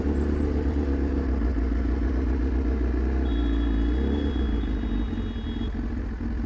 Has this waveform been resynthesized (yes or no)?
no